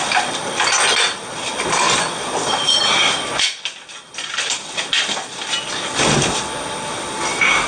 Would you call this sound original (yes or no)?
yes